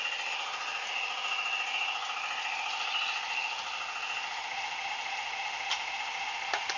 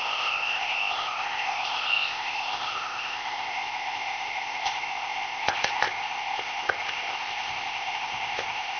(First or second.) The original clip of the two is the first